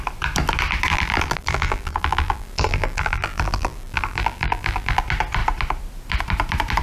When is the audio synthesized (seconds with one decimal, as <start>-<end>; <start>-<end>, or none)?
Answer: 0.9-5.0